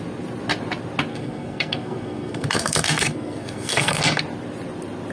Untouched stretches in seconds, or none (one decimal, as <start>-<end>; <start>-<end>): 0.0-1.1; 4.2-5.1